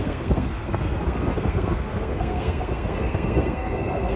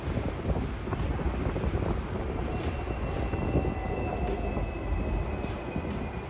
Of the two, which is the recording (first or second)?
second